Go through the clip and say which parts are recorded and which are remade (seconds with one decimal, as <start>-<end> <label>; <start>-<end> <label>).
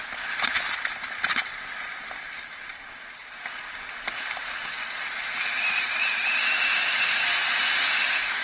0.0-8.4 recorded